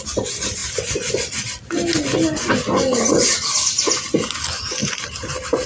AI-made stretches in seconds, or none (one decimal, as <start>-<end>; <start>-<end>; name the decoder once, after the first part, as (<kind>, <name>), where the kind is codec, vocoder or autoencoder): 4.8-5.7 (vocoder, BigVGAN v2)